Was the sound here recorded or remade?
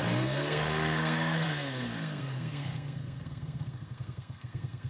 remade